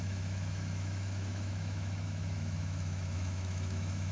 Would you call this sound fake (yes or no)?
yes